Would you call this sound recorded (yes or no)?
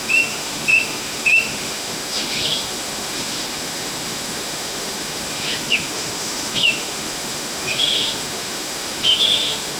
no